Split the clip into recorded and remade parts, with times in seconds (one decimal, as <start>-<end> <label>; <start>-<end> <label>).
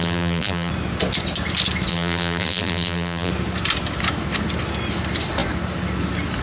0.0-0.7 remade; 0.7-1.9 recorded; 1.9-3.3 remade; 3.3-6.4 recorded